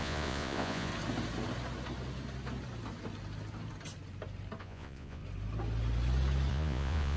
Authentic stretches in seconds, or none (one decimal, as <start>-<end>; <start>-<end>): 0.9-4.6; 5.2-6.5